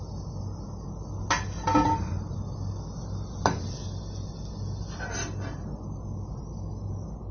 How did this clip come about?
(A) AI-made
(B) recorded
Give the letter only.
B